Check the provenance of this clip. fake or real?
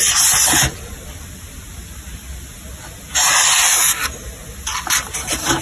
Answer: real